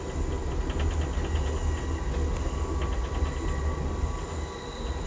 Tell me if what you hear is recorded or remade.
recorded